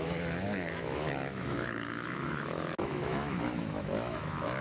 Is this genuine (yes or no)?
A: no